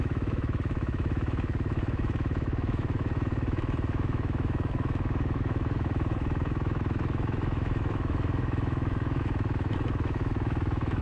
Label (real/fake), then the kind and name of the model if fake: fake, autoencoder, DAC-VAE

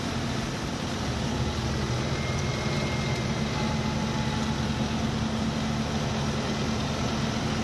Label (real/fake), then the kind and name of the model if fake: real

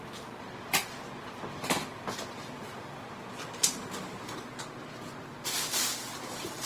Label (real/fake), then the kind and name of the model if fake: real